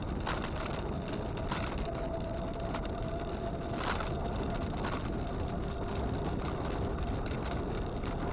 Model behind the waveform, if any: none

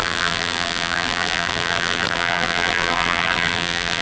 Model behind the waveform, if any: vocoder, BigVGAN v2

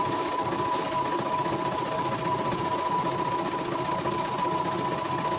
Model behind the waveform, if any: none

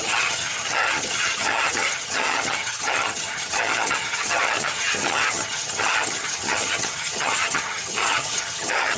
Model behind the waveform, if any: vocoder, HiFi-GAN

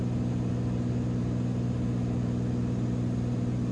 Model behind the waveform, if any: none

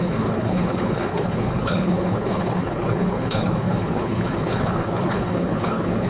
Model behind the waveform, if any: codec, HILCodec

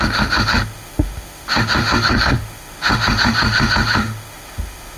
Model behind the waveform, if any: autoencoder, DAC-VAE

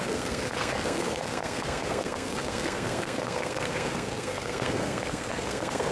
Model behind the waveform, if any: codec, SNAC